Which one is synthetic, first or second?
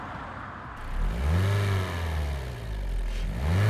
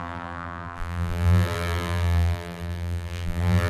second